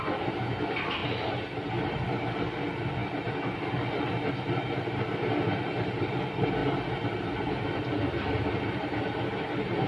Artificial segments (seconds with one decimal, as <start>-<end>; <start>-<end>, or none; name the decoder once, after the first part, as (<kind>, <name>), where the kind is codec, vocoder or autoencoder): none